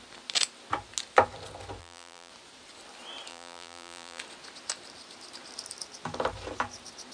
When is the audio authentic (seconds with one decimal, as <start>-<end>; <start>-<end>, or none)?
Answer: 0.0-1.8; 2.3-3.3; 4.2-7.1